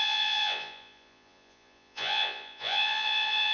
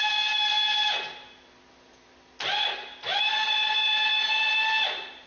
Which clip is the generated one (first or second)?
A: first